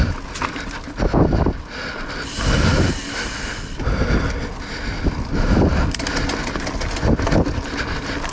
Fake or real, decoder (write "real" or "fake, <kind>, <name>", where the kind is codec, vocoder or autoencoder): real